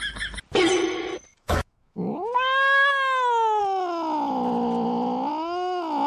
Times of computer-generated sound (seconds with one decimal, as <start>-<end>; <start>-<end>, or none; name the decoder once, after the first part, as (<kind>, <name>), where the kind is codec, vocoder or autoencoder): 1.3-3.6 (autoencoder, DAC-VAE); 5.3-6.1